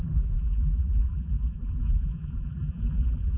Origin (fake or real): fake